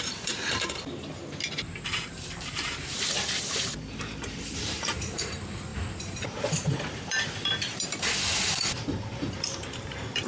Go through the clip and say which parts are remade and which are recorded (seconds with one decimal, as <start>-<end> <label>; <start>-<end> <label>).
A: 0.0-1.2 remade; 1.2-2.1 recorded; 2.1-10.3 remade